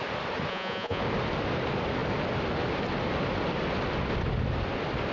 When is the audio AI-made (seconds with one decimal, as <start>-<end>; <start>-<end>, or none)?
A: 0.5-1.0